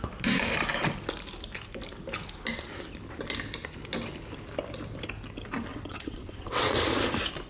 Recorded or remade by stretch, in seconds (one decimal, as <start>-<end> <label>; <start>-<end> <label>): 0.0-5.7 recorded; 5.7-6.8 remade; 6.8-7.5 recorded